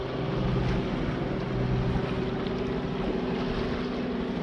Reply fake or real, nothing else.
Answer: real